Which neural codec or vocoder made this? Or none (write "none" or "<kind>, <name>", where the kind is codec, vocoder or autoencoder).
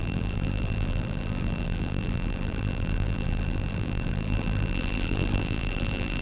vocoder, BigVGAN v2